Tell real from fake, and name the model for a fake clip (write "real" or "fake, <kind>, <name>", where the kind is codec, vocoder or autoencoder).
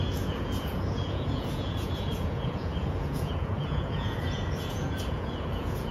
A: fake, vocoder, Vocos